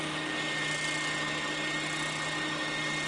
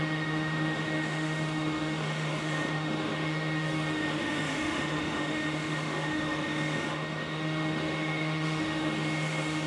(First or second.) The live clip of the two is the first